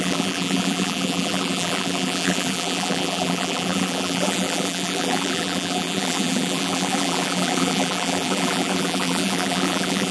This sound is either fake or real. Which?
fake